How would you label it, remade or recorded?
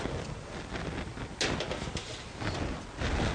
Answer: recorded